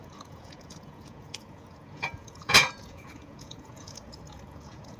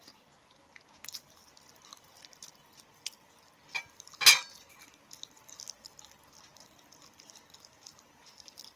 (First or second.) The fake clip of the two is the first